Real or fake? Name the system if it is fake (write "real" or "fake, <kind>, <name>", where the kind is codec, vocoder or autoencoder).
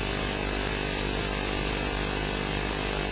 real